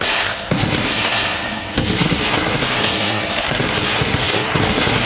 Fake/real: fake